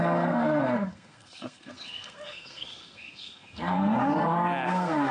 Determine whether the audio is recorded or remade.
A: remade